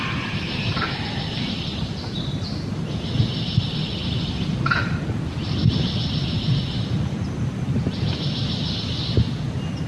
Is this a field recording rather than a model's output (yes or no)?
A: yes